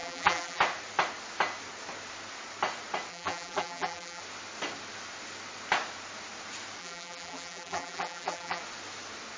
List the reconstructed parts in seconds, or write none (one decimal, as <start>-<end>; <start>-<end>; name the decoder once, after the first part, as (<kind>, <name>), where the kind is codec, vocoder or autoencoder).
0.0-0.6 (vocoder, BigVGAN v2); 3.1-4.2; 6.8-8.6